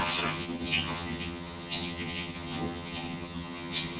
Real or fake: fake